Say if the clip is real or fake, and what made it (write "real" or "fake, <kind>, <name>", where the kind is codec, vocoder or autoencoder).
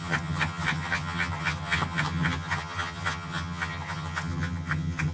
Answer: fake, vocoder, HiFi-GAN